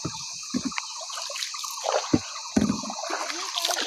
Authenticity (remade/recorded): recorded